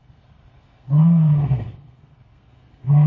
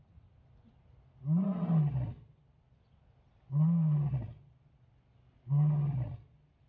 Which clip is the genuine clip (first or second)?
second